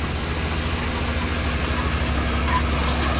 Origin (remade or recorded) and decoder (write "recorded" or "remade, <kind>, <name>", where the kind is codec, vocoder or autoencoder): recorded